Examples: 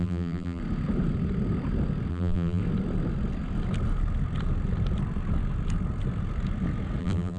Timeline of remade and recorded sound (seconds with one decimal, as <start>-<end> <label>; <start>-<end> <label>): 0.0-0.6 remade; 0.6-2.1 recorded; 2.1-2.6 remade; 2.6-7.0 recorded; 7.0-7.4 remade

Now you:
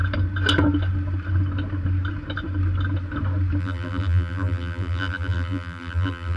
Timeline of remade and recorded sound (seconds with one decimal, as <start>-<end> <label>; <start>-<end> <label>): 0.0-3.6 recorded; 3.6-6.4 remade

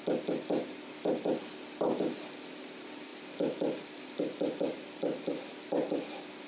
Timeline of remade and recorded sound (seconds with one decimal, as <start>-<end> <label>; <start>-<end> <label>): 0.0-6.5 recorded

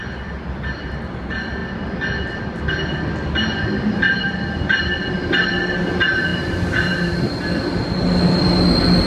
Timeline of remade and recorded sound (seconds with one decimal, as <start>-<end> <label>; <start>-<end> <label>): 0.0-6.3 recorded; 6.3-7.1 remade; 7.1-9.1 recorded

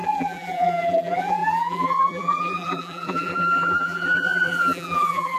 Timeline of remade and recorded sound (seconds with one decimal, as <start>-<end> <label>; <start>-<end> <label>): 0.0-5.4 remade

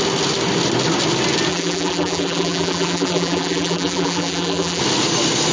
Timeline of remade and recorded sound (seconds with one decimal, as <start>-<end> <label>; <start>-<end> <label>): 0.0-1.5 recorded; 1.5-4.8 remade; 4.8-5.5 recorded